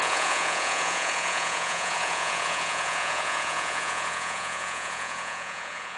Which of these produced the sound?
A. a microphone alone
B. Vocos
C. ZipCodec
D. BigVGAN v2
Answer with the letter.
B